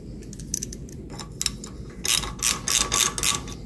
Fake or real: real